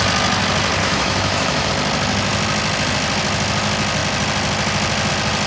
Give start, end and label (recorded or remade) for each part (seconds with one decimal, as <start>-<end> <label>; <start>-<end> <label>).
0.0-0.8 recorded; 0.8-1.7 remade; 1.7-5.5 recorded